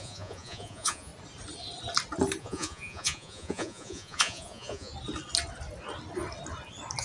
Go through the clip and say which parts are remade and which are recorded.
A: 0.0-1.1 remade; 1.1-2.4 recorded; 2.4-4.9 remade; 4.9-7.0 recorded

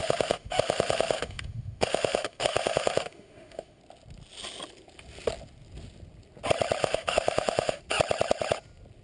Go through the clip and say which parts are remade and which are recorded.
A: 0.0-3.8 remade; 3.8-6.8 recorded; 6.8-7.8 remade; 7.8-9.0 recorded

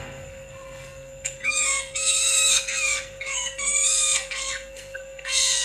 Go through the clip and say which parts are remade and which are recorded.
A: 0.0-5.6 remade